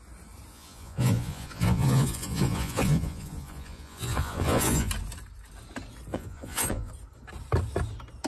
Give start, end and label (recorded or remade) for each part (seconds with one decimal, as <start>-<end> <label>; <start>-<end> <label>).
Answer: 0.0-0.5 recorded; 0.5-4.9 remade; 4.9-6.1 recorded; 6.1-6.9 remade; 6.9-8.3 recorded